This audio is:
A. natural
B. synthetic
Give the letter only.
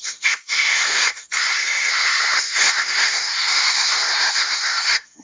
B